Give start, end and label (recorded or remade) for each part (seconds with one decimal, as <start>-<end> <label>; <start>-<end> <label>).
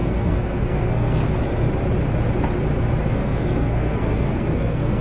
0.0-1.2 remade; 1.2-3.1 recorded; 3.1-5.0 remade